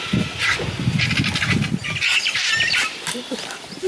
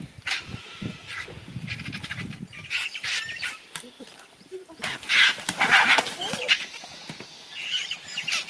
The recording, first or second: first